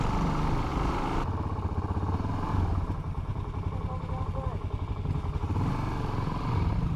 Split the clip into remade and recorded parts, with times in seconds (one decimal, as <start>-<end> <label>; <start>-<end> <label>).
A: 0.0-7.0 recorded